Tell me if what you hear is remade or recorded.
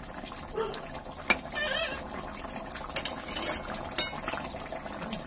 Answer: recorded